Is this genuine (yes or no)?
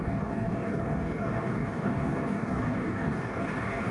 no